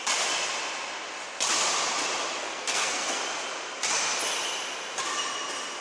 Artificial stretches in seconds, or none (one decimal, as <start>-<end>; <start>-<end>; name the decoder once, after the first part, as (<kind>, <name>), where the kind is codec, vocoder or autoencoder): 2.4-3.2 (codec, SNAC)